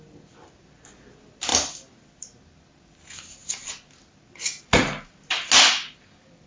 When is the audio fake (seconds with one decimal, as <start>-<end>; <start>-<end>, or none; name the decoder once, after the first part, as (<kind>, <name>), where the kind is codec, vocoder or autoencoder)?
none